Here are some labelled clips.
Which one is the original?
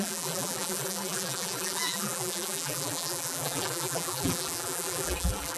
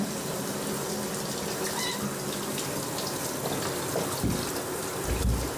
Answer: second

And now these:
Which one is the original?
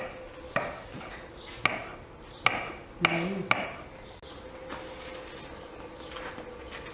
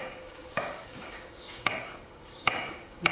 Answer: first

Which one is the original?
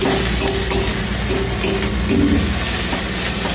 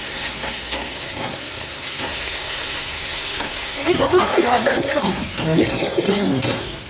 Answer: first